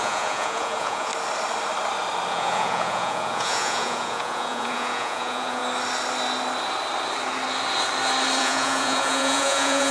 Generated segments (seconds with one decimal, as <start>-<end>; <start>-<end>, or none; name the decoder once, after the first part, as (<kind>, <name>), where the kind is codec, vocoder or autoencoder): 0.0-1.1 (vocoder, Vocos); 2.3-5.6; 8.4-9.9